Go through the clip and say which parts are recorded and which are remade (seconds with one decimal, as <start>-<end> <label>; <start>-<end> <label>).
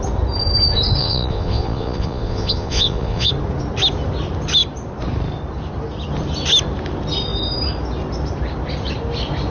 0.0-1.0 recorded; 1.0-3.3 remade; 3.3-9.5 recorded